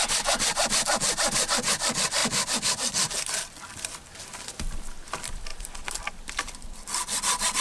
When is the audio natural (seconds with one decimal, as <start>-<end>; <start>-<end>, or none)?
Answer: 0.0-2.2; 4.0-5.5